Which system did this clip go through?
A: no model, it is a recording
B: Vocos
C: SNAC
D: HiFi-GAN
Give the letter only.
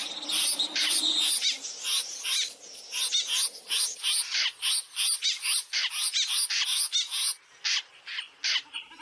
A